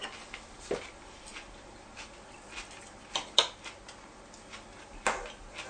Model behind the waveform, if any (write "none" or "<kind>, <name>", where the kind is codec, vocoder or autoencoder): none